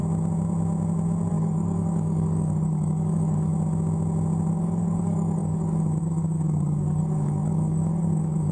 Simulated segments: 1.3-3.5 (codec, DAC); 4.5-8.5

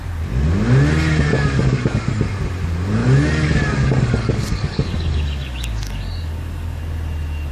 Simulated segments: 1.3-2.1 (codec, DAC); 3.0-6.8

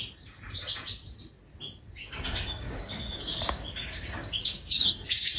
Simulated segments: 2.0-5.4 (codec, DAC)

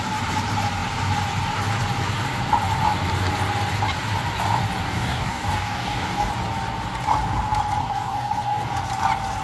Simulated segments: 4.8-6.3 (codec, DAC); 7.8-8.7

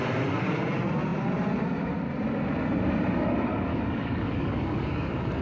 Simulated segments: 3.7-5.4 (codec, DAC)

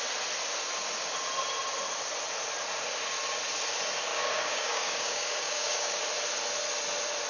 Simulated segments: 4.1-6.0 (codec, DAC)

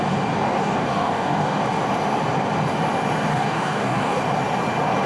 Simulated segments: 0.6-1.6 (codec, DAC); 3.3-4.2

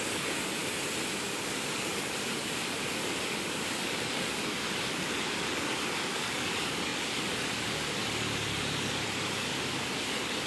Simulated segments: 0.0-0.6 (codec, DAC); 1.2-10.5